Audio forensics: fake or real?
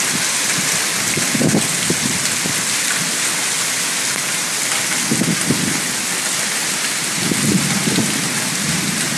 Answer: real